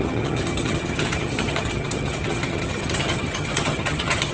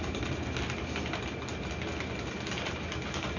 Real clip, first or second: second